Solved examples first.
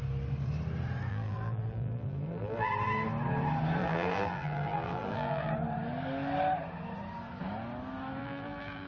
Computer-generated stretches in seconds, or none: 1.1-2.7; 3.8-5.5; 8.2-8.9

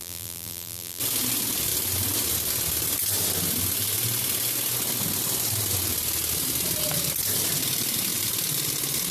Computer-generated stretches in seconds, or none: 0.0-1.0

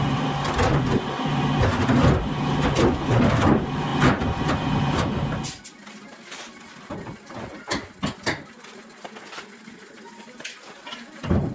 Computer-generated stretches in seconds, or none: none

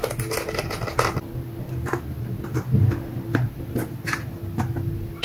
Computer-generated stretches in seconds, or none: none

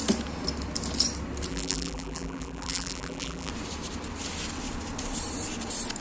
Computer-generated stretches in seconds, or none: 1.5-3.5